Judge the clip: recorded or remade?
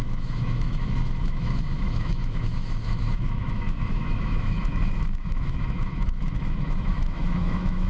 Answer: remade